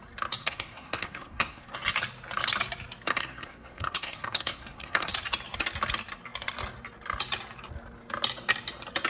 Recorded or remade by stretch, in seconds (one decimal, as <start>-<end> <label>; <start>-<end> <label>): 0.0-0.4 recorded; 0.4-1.7 remade; 1.7-3.1 recorded; 3.1-5.1 remade; 5.1-9.1 recorded